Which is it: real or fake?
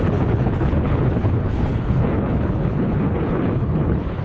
fake